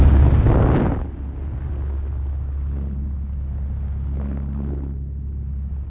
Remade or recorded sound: recorded